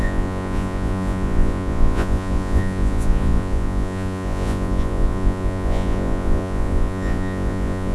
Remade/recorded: remade